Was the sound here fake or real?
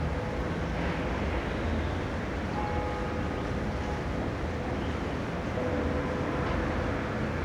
real